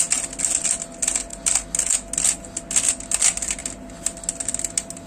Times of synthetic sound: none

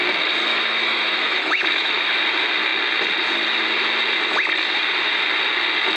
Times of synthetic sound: 0.5-2.1

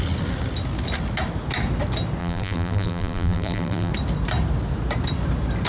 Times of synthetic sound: 2.2-3.9

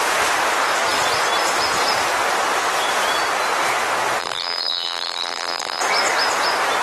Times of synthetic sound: 4.2-5.8